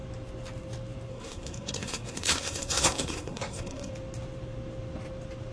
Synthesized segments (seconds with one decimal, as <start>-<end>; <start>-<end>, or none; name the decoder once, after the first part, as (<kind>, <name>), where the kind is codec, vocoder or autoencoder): 1.1-3.9 (codec, SNAC)